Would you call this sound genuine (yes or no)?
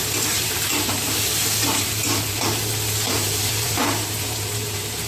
no